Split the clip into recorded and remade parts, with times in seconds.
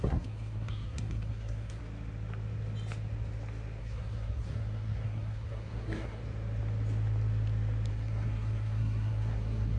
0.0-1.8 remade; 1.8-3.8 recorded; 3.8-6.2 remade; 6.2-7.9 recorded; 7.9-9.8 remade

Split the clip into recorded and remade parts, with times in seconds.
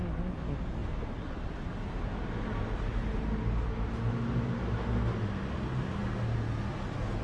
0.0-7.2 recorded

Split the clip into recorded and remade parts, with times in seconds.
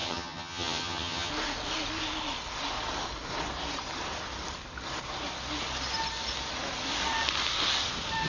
0.0-1.3 remade; 1.3-8.3 recorded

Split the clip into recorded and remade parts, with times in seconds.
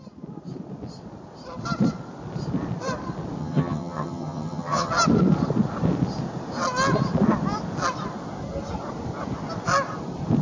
0.0-3.4 recorded; 3.4-4.9 remade; 4.9-10.4 recorded